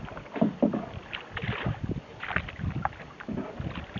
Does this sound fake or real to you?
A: real